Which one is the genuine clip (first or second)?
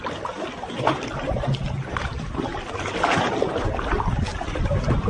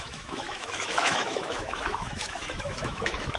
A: first